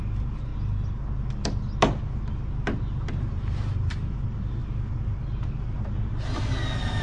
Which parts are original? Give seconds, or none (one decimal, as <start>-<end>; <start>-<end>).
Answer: 0.5-3.1; 4.6-7.0